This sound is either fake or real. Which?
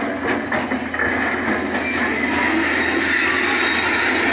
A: real